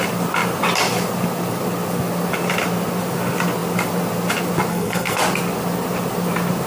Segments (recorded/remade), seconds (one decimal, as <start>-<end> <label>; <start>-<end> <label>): 0.0-4.7 recorded; 4.7-5.2 remade; 5.2-6.7 recorded